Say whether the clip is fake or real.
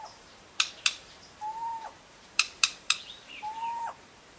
fake